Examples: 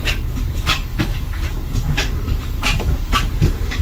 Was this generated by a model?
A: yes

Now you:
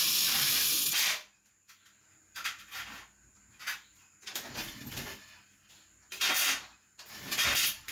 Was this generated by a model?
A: no